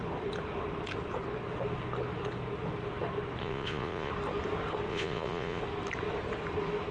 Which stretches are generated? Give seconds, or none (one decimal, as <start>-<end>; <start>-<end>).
3.4-4.1; 4.9-5.6